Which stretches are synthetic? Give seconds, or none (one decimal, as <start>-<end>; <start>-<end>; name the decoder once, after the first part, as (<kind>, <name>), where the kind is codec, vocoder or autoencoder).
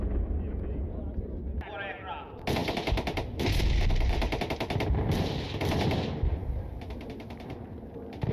none